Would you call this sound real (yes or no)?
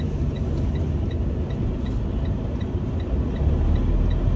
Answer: yes